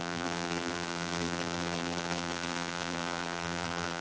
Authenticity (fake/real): fake